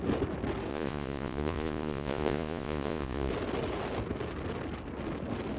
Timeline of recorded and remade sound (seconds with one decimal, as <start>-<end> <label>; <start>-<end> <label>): 0.0-0.7 recorded; 0.7-3.3 remade; 3.3-5.6 recorded